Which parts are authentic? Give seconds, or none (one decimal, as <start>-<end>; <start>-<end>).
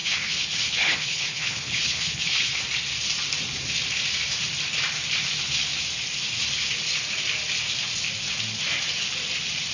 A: 2.6-9.7